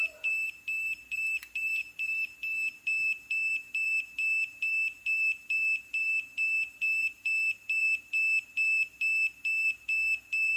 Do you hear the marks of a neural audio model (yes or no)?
yes